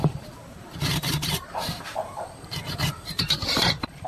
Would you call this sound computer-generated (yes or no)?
yes